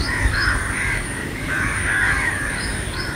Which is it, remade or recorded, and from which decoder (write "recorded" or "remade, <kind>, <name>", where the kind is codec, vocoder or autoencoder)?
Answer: remade, codec, DAC